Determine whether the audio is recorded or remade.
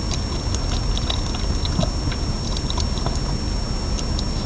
recorded